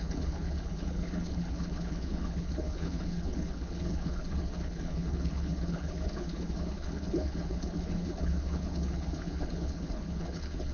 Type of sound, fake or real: fake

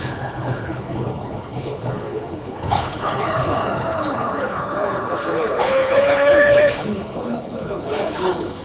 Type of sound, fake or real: fake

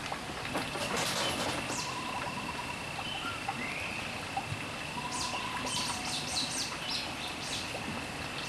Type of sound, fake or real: real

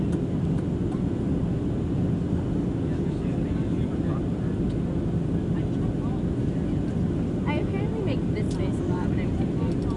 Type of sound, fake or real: real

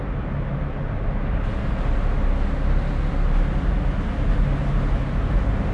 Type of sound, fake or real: real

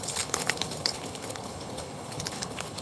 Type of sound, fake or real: fake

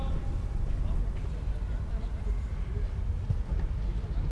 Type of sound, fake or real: real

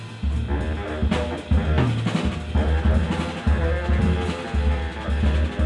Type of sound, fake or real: real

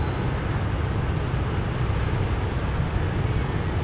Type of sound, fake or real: real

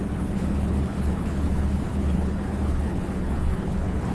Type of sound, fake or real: fake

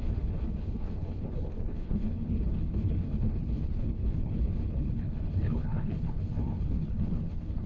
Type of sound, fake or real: fake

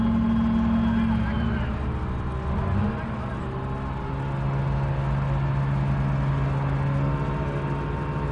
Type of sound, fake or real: real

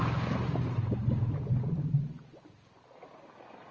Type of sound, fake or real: real